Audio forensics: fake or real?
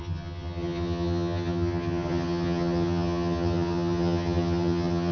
fake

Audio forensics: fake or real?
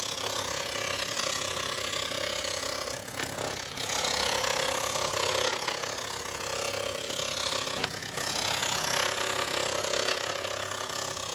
fake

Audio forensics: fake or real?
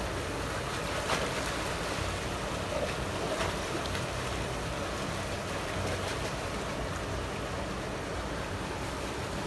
real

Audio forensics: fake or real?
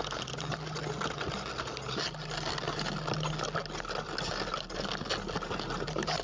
real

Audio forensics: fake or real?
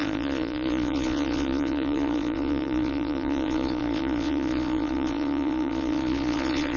fake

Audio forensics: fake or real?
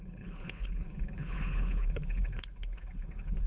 fake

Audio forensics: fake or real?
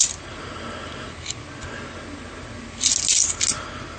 real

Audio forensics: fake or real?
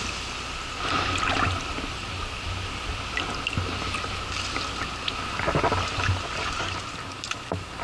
real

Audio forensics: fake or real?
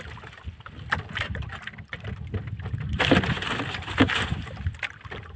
real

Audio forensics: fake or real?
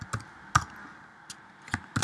real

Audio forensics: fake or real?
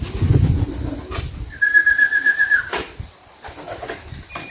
real